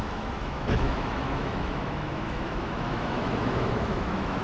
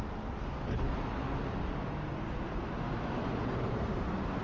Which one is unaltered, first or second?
second